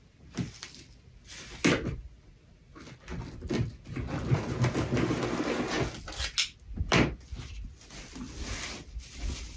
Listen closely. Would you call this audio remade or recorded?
recorded